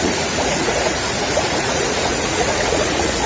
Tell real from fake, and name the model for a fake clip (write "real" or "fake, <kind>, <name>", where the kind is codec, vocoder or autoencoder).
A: fake, vocoder, Vocos